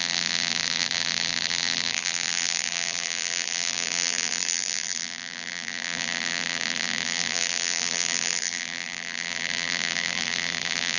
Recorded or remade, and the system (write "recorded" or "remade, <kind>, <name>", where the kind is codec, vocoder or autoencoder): remade, vocoder, BigVGAN v2